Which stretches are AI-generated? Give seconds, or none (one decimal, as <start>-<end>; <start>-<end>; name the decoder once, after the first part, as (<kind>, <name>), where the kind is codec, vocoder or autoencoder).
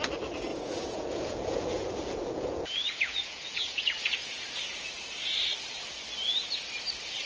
0.5-4.9 (vocoder, Vocos)